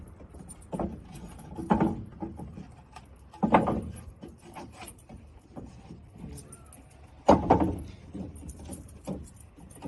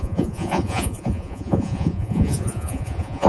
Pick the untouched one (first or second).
first